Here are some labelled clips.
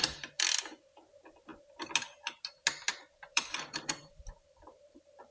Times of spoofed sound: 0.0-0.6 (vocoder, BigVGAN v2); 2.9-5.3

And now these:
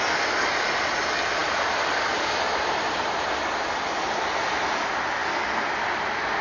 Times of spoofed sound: 1.4-4.8 (vocoder, BigVGAN v2); 5.2-6.4

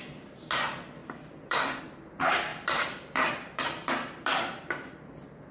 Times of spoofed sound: 1.0-1.8 (vocoder, BigVGAN v2); 2.5-4.7

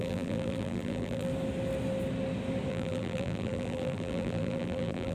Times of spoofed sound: 0.0-1.3 (vocoder, BigVGAN v2); 2.7-5.1

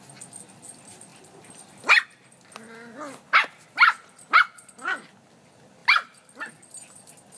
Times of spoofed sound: none

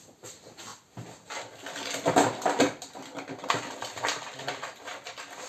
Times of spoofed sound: none

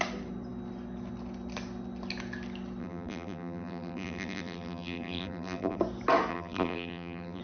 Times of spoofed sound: 2.8-5.8 (vocoder, BigVGAN v2); 6.3-7.4

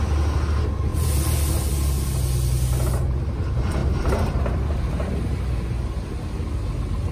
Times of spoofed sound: none